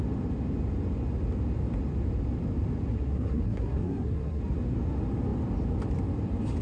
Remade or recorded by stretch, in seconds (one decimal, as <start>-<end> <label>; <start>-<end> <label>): 0.0-2.9 recorded; 2.9-4.4 remade; 4.4-6.6 recorded